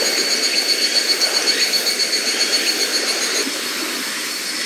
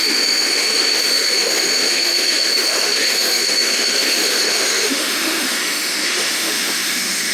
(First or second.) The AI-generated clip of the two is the second